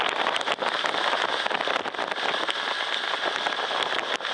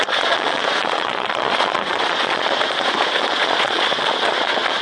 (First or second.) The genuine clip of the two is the first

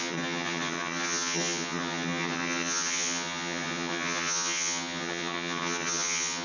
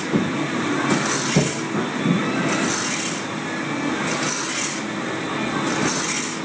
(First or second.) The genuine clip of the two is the second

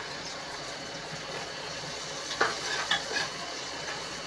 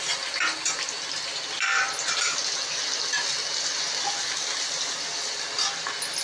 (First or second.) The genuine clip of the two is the second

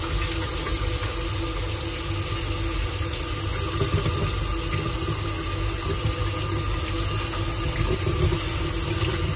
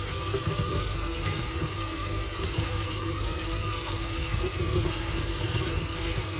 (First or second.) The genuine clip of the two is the first